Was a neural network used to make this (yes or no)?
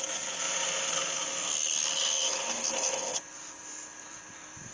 no